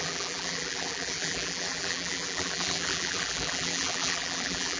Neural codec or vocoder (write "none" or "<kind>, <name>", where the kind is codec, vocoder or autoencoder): vocoder, BigVGAN v2